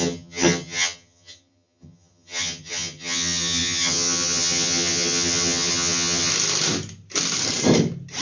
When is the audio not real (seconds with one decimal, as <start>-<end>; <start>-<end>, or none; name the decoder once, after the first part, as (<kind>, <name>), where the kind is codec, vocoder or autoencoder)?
0.0-6.3 (vocoder, HiFi-GAN)